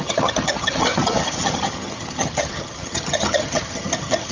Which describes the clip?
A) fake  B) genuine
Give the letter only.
A